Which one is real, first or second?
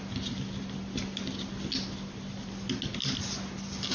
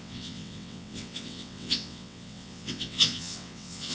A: first